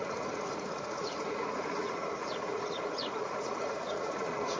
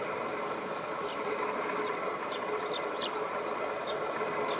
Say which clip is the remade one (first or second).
first